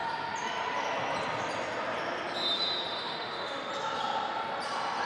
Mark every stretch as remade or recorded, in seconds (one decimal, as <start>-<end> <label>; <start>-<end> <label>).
0.0-3.0 recorded; 3.0-3.7 remade; 3.7-5.1 recorded